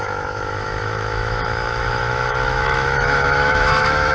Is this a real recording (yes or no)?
no